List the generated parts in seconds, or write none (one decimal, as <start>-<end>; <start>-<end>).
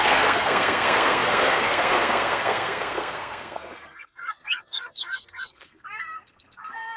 0.0-7.0